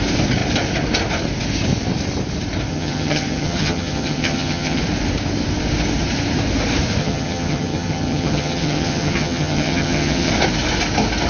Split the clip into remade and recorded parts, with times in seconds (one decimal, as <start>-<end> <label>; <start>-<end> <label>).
0.0-2.7 recorded; 2.7-4.8 remade; 4.8-7.0 recorded; 7.0-10.3 remade; 10.3-11.3 recorded